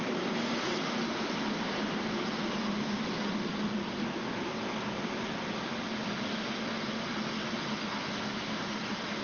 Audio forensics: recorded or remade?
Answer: recorded